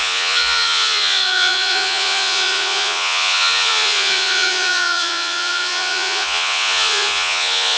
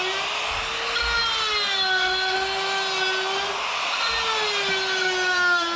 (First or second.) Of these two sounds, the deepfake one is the first